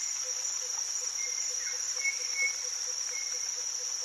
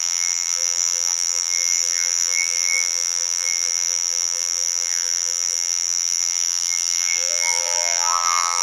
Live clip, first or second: first